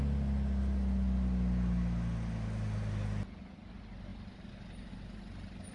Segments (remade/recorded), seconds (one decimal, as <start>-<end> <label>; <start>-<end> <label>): 0.0-5.7 recorded